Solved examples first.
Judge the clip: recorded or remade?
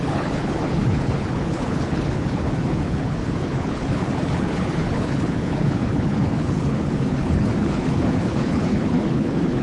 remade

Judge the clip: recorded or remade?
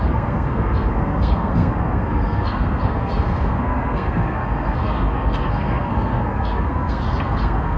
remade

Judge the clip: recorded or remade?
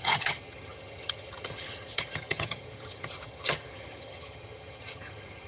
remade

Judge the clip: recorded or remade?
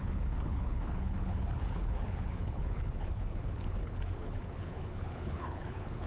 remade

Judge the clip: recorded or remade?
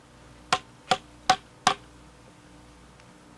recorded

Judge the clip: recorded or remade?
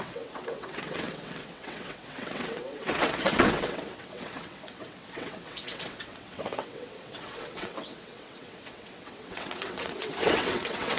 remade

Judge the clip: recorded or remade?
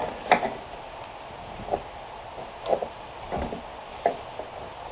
remade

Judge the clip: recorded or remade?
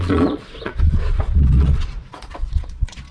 remade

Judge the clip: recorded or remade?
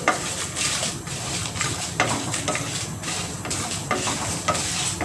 recorded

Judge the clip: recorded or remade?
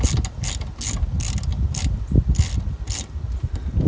recorded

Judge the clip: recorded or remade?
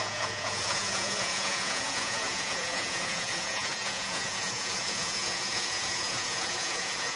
remade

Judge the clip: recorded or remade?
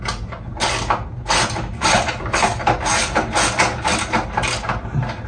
recorded